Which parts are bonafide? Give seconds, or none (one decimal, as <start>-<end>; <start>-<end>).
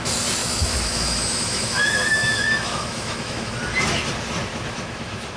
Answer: 0.0-0.4; 3.6-4.5